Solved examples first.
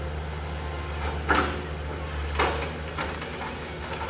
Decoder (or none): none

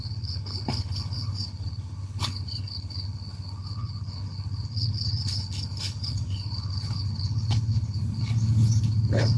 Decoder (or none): codec, HILCodec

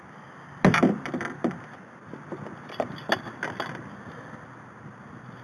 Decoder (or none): none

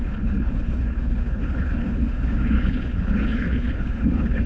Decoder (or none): codec, HILCodec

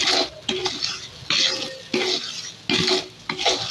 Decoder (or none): none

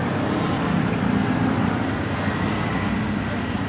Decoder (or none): none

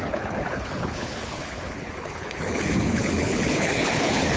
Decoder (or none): codec, HILCodec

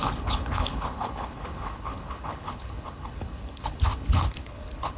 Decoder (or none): codec, HILCodec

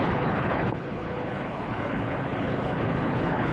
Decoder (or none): codec, HILCodec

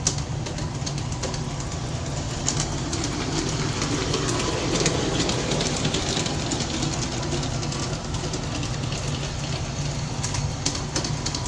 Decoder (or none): none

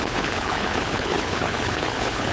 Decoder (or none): codec, HILCodec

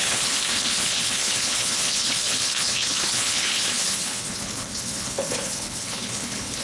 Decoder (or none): codec, HILCodec